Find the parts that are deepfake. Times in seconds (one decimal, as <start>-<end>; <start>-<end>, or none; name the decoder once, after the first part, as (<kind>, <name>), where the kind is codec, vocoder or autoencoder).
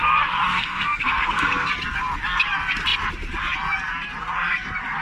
0.5-1.7 (codec, SNAC)